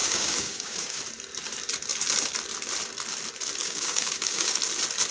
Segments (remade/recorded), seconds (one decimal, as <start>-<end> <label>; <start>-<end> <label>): 0.0-1.0 remade; 1.0-3.6 recorded; 3.6-4.6 remade; 4.6-5.1 recorded

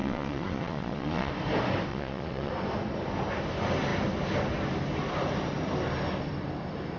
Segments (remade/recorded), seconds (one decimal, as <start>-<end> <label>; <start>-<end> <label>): 0.0-1.3 remade; 1.3-1.9 recorded; 1.9-2.5 remade; 2.5-7.0 recorded

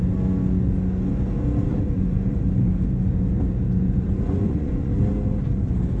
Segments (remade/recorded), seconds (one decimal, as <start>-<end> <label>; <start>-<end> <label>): 0.0-1.7 recorded; 1.7-2.4 remade; 2.4-3.8 recorded; 3.8-4.9 remade; 4.9-6.0 recorded

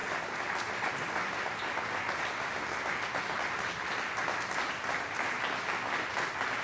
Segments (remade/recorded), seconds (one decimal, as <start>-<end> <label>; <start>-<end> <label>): 0.0-6.6 recorded

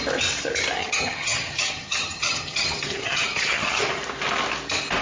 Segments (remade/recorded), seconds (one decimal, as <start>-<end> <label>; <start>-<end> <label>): 0.0-0.8 recorded; 0.8-3.8 remade; 3.8-5.0 recorded

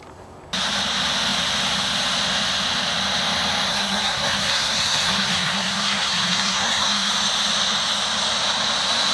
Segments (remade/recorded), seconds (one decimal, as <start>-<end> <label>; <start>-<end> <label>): 0.0-3.7 recorded; 3.7-7.1 remade; 7.1-9.1 recorded

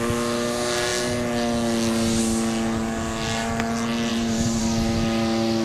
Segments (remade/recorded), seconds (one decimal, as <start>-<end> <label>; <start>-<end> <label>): 0.0-4.1 recorded; 4.1-4.6 remade; 4.6-5.6 recorded